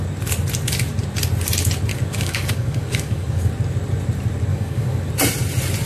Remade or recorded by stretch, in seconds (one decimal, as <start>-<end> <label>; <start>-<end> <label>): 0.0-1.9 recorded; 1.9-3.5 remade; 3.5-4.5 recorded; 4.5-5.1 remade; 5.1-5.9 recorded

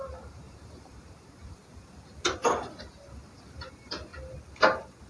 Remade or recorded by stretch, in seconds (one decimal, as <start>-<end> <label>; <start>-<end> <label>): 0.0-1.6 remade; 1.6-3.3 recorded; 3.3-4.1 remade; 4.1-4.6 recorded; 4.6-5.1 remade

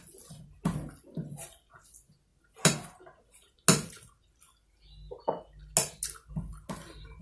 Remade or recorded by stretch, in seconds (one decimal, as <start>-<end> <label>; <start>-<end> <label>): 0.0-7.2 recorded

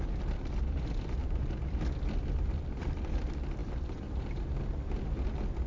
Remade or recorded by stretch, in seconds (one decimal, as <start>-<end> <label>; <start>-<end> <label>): 0.0-1.2 recorded; 1.2-1.8 remade; 1.8-3.6 recorded; 3.6-4.4 remade; 4.4-5.7 recorded

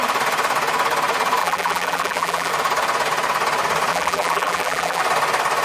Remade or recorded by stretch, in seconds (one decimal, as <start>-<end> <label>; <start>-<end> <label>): 0.0-1.4 recorded; 1.4-2.5 remade; 2.5-3.9 recorded; 3.9-5.0 remade; 5.0-5.6 recorded